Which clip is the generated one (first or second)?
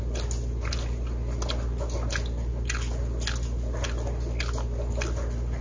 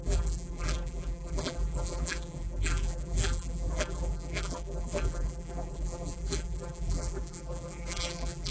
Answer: second